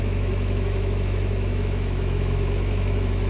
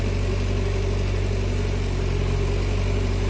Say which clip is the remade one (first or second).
first